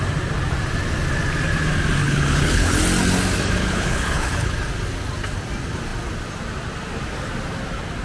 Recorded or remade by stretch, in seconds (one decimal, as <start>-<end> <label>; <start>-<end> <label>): 0.0-2.0 recorded; 2.0-2.8 remade; 2.8-3.6 recorded; 3.6-4.5 remade; 4.5-8.0 recorded